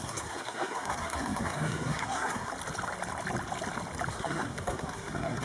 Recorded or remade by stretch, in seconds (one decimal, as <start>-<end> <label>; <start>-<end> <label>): 0.0-2.5 remade; 2.5-4.1 recorded; 4.1-5.4 remade

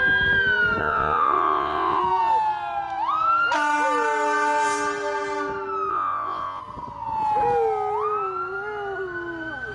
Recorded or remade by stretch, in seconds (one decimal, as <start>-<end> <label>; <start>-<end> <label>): 0.0-0.8 recorded; 0.8-2.0 remade; 2.0-5.9 recorded; 5.9-6.6 remade; 6.6-9.7 recorded

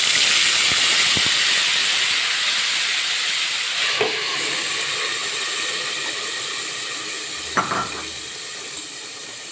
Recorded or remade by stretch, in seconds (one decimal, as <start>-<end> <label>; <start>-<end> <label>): 0.0-9.5 recorded

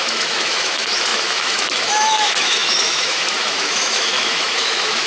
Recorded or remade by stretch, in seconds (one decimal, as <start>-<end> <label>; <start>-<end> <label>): 0.0-5.1 remade

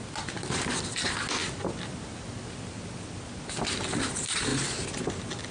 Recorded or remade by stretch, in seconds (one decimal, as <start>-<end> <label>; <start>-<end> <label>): 0.0-5.5 recorded

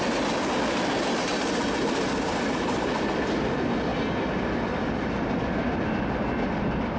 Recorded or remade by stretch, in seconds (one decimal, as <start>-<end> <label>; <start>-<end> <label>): 0.0-7.0 recorded